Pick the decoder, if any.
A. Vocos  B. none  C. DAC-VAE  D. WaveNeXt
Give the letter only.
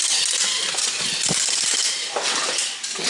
B